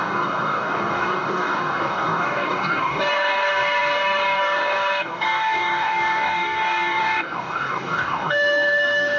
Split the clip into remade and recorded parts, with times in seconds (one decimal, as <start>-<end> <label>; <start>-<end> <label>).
0.0-9.2 remade